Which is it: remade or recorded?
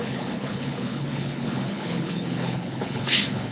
remade